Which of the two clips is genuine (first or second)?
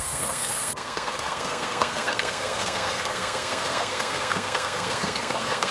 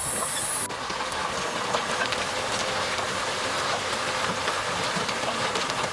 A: second